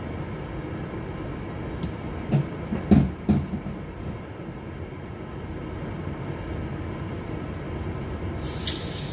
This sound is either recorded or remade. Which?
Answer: recorded